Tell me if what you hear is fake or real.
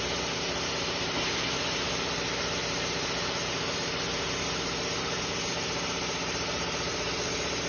fake